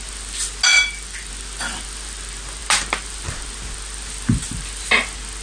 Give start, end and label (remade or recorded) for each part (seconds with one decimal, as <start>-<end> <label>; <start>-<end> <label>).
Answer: 0.0-0.7 recorded; 0.7-1.3 remade; 1.3-5.4 recorded